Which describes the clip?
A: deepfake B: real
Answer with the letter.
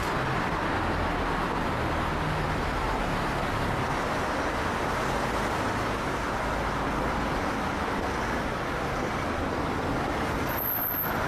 B